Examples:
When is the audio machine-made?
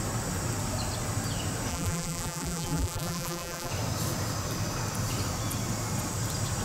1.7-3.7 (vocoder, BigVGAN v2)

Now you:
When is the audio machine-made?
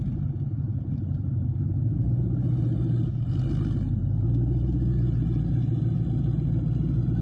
0.5-1.7 (vocoder, BigVGAN v2)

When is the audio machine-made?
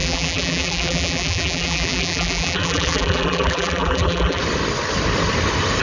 0.0-4.4 (vocoder, BigVGAN v2)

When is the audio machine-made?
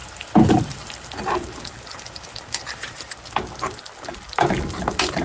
0.0-3.1 (vocoder, BigVGAN v2)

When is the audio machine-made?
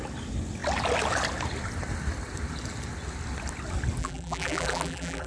4.0-5.3 (vocoder, BigVGAN v2)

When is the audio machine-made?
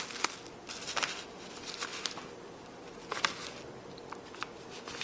none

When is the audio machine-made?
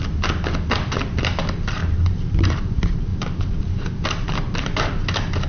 1.8-2.6 (vocoder, BigVGAN v2); 3.1-3.6